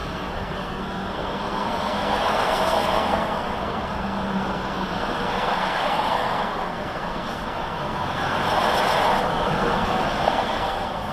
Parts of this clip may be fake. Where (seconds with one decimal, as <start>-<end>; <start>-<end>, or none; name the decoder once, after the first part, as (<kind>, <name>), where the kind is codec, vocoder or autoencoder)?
0.0-8.4 (codec, SNAC); 9.3-11.1